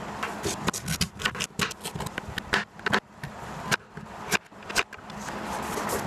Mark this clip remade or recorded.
recorded